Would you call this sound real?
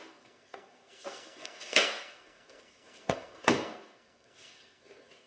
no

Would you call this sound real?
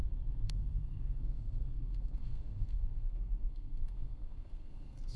no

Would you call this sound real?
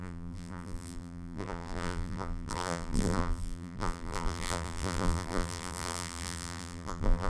no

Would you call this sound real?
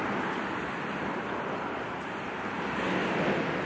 yes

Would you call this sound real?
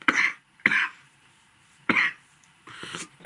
no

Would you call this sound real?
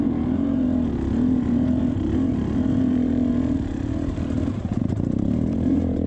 no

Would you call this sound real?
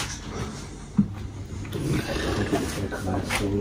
yes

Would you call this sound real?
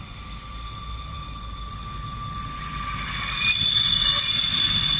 yes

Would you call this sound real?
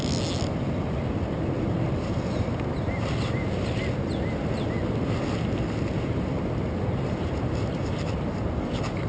yes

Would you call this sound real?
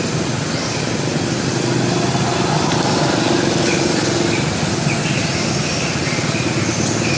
yes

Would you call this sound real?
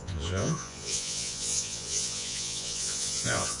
no